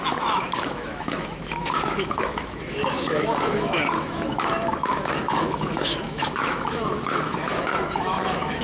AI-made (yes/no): yes